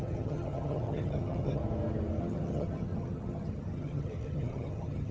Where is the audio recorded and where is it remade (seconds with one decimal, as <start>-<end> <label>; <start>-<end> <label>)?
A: 0.0-1.6 remade; 1.6-2.2 recorded; 2.2-5.1 remade